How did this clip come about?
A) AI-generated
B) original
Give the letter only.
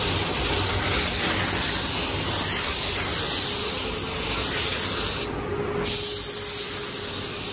B